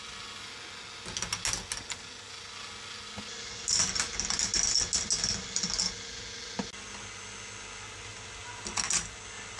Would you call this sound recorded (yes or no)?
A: yes